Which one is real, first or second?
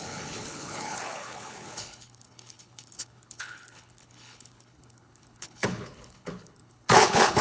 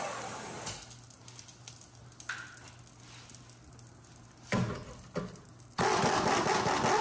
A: second